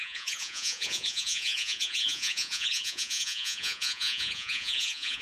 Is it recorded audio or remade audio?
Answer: remade